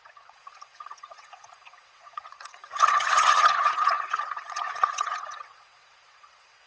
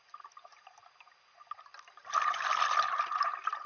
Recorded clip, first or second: second